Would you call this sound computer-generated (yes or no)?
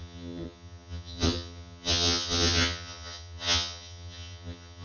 yes